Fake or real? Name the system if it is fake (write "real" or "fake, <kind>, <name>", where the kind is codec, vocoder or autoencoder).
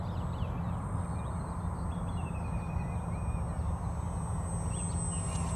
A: real